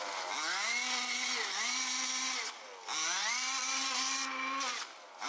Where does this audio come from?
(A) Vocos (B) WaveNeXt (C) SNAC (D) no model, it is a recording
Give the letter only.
D